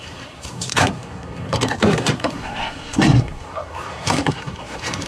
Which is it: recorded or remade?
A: remade